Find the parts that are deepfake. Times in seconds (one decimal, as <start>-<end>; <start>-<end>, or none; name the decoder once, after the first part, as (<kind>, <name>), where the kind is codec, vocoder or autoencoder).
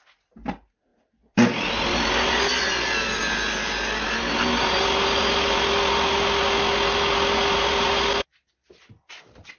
none